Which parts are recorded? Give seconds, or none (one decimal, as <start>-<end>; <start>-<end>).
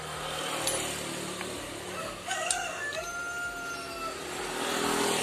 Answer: 0.0-2.0; 2.5-5.2